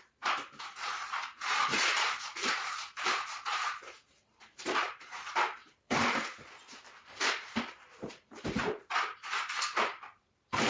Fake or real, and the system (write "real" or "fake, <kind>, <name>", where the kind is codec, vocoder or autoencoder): fake, vocoder, BigVGAN v2